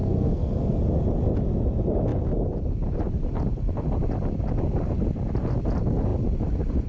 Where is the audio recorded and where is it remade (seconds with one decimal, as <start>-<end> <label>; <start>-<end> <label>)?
0.0-0.8 remade; 0.8-6.9 recorded